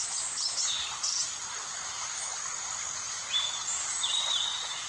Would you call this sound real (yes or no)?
yes